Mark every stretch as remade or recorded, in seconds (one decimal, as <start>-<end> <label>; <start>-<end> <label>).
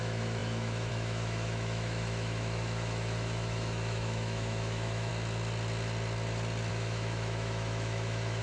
0.0-5.1 remade; 5.1-6.7 recorded; 6.7-8.4 remade